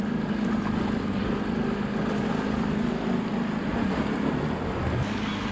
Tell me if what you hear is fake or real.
real